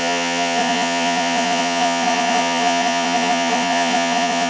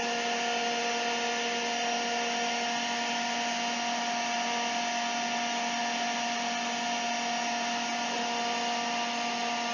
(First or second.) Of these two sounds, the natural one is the second